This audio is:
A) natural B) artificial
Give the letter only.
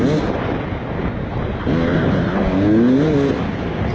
A